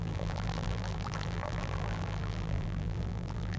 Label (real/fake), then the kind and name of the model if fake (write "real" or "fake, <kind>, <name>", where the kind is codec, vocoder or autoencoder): fake, vocoder, BigVGAN v2